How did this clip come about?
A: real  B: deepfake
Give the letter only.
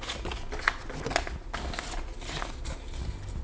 A